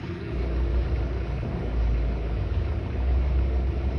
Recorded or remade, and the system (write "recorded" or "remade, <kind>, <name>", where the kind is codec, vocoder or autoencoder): remade, codec, DAC